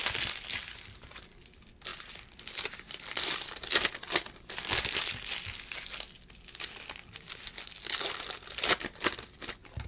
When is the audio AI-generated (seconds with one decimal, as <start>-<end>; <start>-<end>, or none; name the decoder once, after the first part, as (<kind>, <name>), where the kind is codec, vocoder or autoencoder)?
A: 1.9-4.5 (vocoder, BigVGAN v2)